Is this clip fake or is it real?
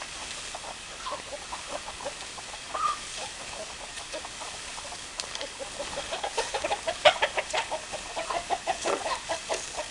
fake